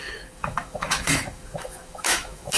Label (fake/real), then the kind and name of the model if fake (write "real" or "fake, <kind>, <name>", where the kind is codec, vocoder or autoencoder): fake, autoencoder, DAC-VAE